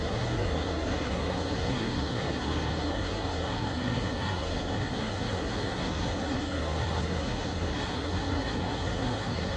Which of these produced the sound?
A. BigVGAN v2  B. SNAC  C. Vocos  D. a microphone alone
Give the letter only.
B